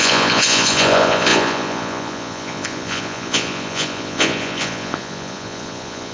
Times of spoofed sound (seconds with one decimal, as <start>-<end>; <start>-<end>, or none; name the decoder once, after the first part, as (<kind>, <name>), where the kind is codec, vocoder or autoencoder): 0.0-6.1 (vocoder, Vocos)